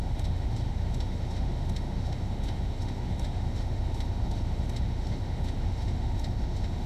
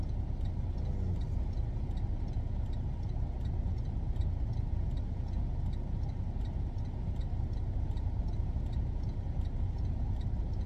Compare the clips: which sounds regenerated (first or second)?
first